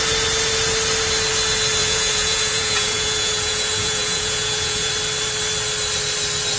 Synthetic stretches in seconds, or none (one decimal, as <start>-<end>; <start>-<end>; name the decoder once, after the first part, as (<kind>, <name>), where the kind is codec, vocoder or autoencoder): 1.8-4.9 (vocoder, Vocos)